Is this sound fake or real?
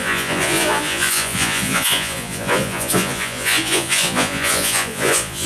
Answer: fake